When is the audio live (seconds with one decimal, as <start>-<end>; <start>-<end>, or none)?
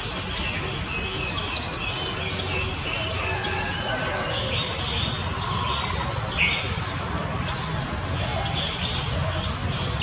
0.0-10.0